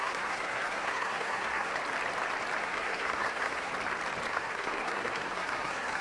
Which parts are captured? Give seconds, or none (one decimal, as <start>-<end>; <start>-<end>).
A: 1.7-2.6; 3.7-4.3